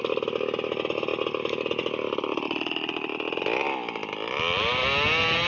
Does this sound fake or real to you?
real